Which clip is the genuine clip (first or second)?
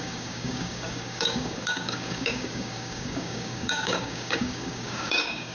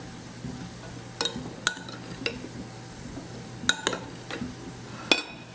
second